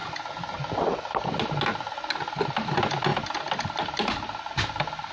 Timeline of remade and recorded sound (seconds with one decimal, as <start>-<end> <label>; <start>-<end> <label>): 0.0-5.1 recorded